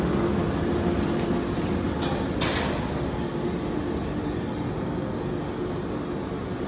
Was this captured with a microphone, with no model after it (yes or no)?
yes